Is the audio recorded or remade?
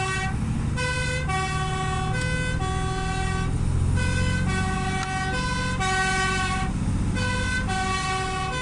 recorded